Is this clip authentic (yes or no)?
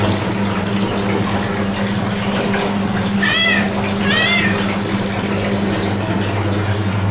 yes